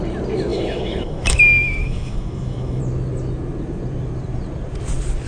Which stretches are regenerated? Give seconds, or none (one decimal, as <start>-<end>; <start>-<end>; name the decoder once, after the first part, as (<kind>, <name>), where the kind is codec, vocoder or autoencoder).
0.5-2.8 (autoencoder, DAC-VAE)